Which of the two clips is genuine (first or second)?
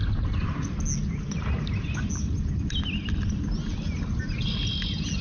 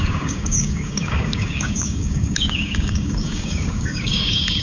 first